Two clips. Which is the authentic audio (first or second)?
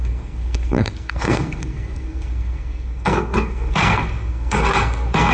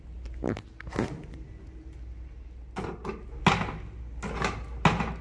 second